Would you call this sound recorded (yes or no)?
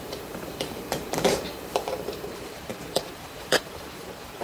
no